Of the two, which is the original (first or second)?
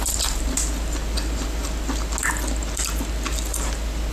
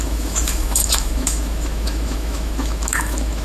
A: first